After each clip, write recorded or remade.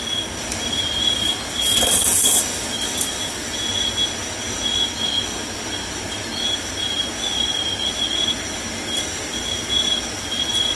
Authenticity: recorded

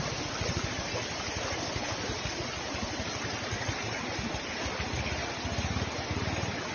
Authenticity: recorded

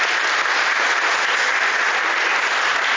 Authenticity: remade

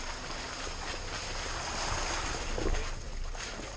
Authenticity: recorded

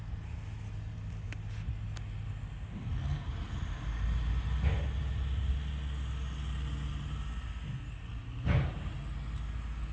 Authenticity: recorded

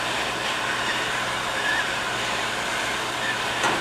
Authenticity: recorded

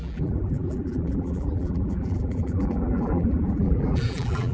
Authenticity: remade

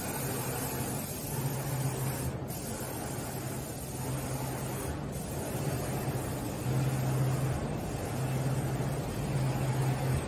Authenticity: recorded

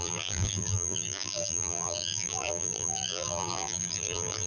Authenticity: remade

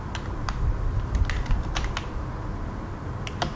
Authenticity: recorded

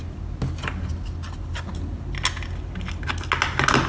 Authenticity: recorded